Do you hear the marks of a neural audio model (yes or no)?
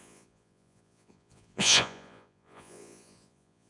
yes